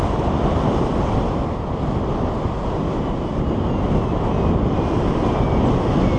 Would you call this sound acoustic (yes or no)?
yes